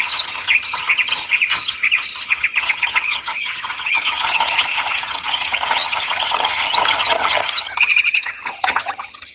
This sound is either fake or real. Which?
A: fake